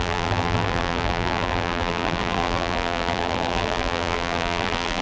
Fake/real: fake